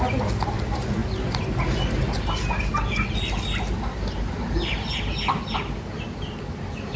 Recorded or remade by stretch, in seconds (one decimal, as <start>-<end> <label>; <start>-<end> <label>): 0.0-7.0 recorded